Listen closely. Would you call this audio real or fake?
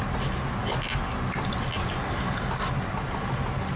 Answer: real